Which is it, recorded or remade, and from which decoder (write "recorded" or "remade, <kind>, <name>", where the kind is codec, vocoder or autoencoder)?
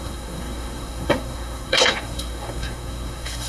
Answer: remade, codec, SNAC